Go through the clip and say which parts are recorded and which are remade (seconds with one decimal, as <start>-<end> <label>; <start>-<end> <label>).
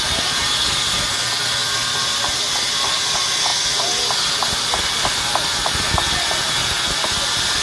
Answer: 0.0-7.6 recorded